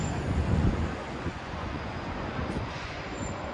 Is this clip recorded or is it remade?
remade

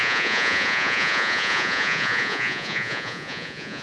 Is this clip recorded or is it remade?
remade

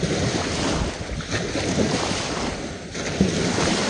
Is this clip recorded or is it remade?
recorded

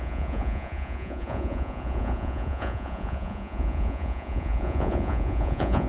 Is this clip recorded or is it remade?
remade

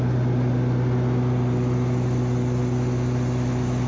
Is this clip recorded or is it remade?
recorded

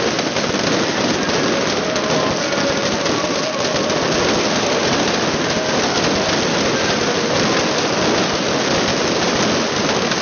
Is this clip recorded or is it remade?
recorded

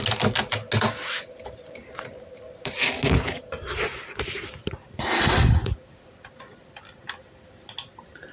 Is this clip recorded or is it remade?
recorded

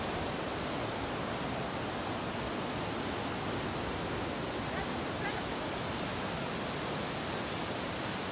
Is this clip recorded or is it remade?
recorded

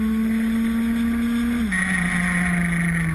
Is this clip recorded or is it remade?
recorded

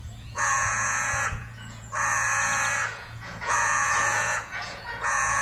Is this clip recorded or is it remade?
remade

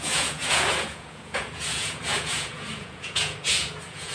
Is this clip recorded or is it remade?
remade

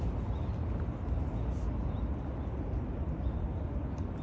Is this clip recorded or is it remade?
recorded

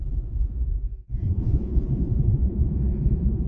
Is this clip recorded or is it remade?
remade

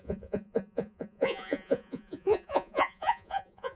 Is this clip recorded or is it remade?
remade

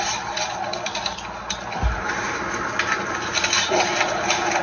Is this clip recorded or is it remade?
recorded